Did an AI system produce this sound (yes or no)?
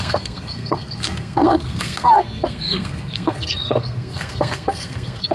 yes